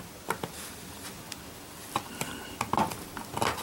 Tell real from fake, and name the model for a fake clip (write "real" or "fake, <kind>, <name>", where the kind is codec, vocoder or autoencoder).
real